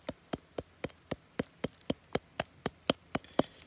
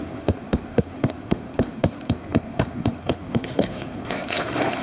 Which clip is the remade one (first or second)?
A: second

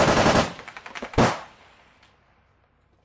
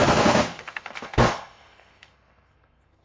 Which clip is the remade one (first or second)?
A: second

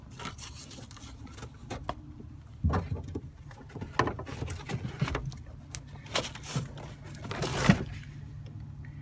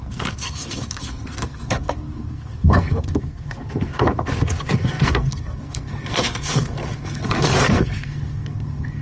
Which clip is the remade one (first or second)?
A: second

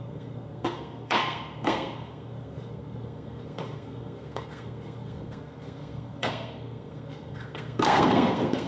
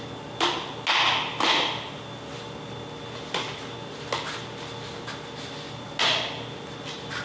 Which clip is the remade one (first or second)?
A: first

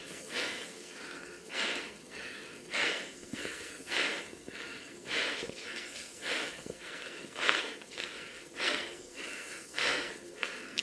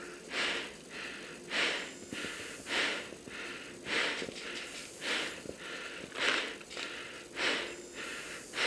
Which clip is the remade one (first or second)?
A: first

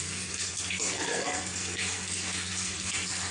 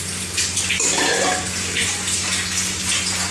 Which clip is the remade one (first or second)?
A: first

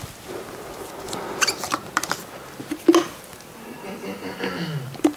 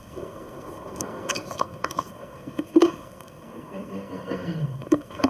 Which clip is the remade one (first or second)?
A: second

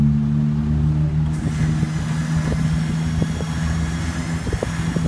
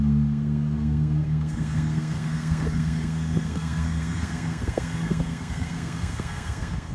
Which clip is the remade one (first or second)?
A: second